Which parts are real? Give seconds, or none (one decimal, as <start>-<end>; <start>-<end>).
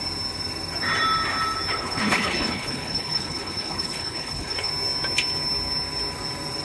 0.0-1.7; 4.7-6.6